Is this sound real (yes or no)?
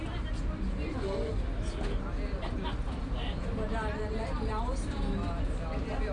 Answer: yes